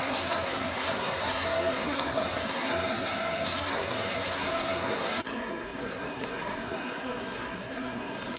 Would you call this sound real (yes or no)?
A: no